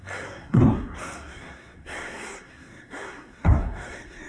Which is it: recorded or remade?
remade